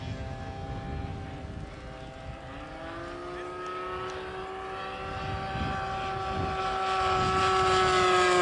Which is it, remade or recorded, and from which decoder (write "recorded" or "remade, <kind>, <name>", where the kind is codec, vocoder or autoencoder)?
recorded